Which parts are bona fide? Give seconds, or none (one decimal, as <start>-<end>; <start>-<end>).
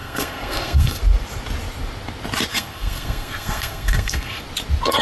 1.0-2.5; 4.4-5.0